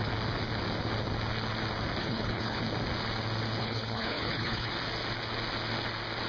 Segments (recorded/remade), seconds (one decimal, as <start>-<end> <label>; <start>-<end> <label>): 0.0-2.0 recorded; 2.0-2.6 remade; 2.6-3.6 recorded; 3.6-4.7 remade; 4.7-6.3 recorded